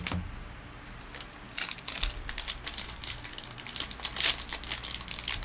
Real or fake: real